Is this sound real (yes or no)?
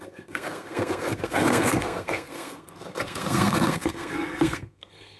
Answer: no